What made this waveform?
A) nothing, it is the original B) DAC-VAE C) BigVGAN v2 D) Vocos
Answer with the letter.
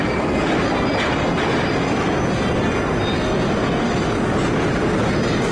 A